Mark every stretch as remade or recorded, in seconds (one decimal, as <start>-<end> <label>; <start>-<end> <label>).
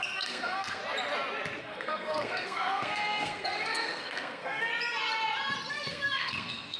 0.0-0.8 remade; 0.8-1.6 recorded; 1.6-4.7 remade; 4.7-5.7 recorded; 5.7-6.8 remade